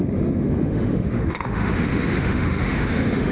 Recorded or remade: remade